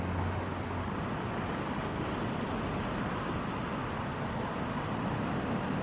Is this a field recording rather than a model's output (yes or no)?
yes